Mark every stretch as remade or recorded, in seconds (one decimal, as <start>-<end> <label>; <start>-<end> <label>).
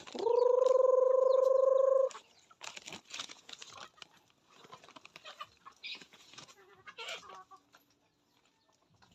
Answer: 0.0-3.1 recorded; 3.1-3.8 remade; 3.8-5.8 recorded; 5.8-7.3 remade; 7.3-9.1 recorded